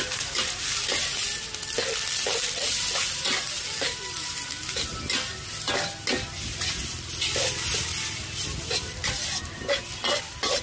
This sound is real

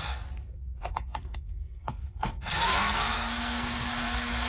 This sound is fake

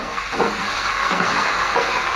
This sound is fake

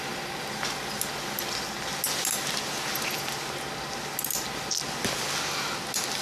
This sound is real